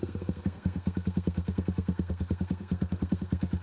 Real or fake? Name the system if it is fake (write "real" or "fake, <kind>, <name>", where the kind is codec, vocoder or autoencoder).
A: fake, codec, SNAC